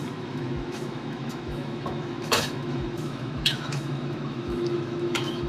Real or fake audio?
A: fake